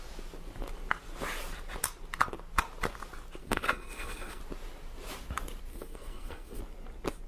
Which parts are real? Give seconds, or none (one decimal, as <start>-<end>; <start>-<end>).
0.0-3.4; 4.4-5.7; 6.6-7.3